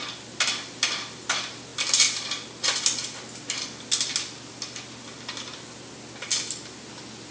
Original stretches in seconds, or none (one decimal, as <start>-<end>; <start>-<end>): 0.0-7.3